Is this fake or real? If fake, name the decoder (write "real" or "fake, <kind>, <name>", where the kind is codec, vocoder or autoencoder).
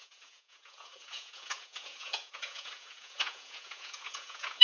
fake, vocoder, Vocos